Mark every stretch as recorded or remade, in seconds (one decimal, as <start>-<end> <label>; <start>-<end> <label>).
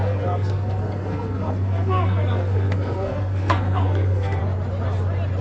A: 0.0-4.4 remade; 4.4-5.4 recorded